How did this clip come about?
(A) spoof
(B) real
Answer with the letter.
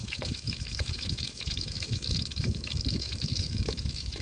A